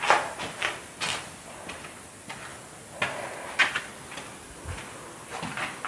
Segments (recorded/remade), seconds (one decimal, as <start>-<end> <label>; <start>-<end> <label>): 0.0-5.9 recorded